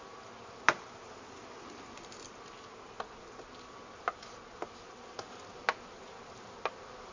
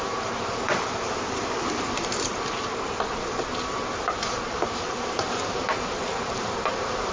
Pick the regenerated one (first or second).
second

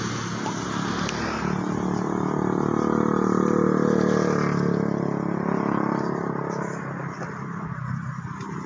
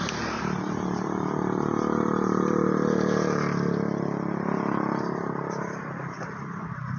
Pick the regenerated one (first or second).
second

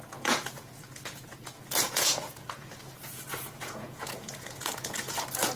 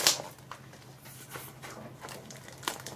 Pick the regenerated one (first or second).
first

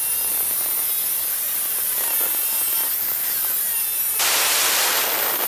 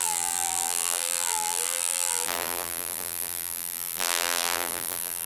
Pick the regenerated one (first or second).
second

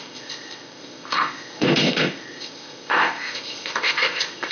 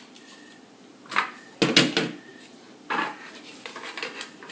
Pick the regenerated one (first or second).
first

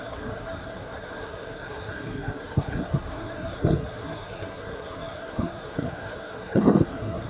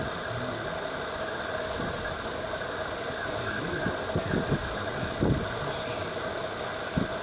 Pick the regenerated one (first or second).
first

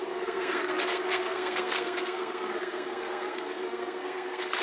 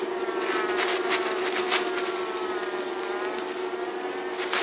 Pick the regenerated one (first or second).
first